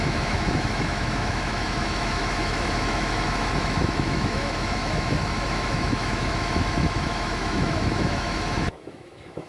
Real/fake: fake